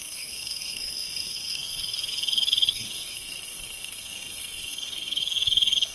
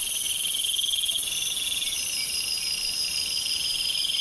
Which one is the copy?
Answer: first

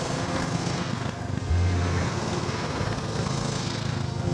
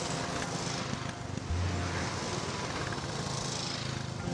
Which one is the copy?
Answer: first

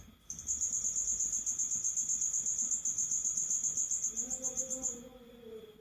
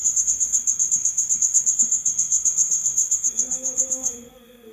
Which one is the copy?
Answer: second